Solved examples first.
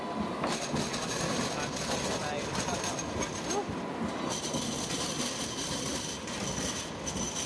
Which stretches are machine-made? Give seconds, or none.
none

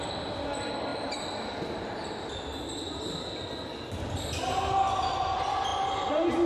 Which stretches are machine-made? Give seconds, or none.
none

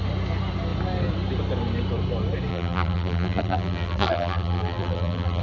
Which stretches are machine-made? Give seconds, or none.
2.5-5.4 (vocoder, BigVGAN v2)

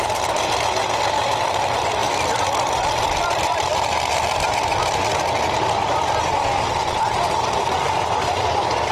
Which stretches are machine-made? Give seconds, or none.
none

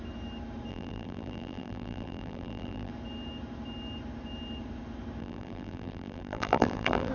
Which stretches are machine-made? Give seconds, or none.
0.7-2.9 (vocoder, BigVGAN v2); 5.2-7.1

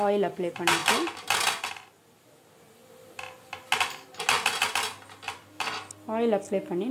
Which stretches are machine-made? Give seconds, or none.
0.0-0.8 (vocoder, BigVGAN v2); 1.7-2.8

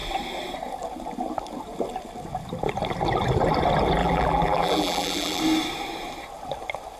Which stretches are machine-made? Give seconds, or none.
4.0-5.4 (vocoder, BigVGAN v2)